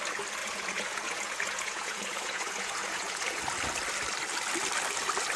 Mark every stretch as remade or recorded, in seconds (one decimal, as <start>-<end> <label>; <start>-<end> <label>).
0.0-0.4 recorded; 0.4-3.4 remade; 3.4-5.4 recorded